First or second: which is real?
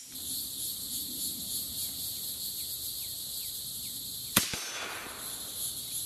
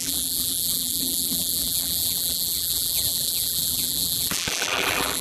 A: first